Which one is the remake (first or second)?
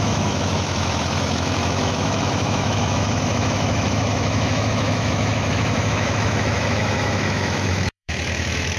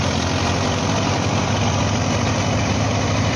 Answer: first